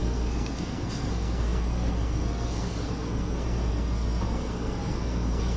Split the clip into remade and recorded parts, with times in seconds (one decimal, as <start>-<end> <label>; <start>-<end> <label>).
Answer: 0.0-5.6 remade